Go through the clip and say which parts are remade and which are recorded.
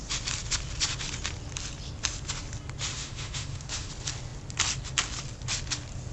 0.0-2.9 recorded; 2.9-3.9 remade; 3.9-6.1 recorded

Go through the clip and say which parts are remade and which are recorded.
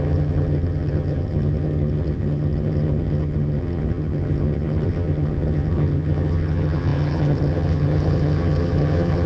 0.0-9.3 remade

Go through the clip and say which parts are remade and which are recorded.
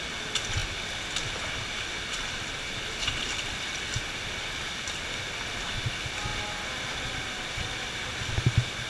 0.0-8.9 recorded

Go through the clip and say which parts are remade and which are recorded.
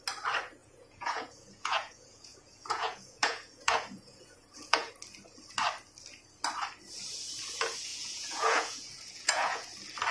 0.0-0.6 recorded; 0.6-4.9 remade; 4.9-7.9 recorded; 7.9-9.7 remade; 9.7-10.1 recorded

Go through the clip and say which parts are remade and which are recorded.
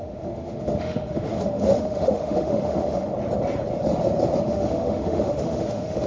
0.0-3.1 remade; 3.1-4.4 recorded; 4.4-6.1 remade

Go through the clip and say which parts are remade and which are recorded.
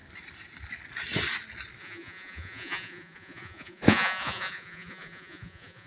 0.0-1.8 recorded; 1.8-5.9 remade